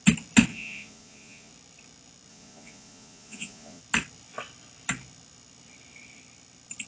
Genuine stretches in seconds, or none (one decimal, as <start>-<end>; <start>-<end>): 0.0-0.5; 1.5-2.3; 3.8-6.9